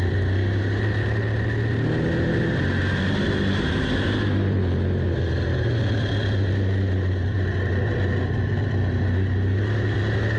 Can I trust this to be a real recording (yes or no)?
yes